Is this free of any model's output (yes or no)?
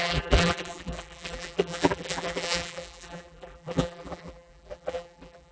no